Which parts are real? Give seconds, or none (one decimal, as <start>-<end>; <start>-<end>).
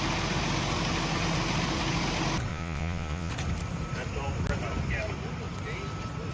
0.0-2.5; 3.3-6.3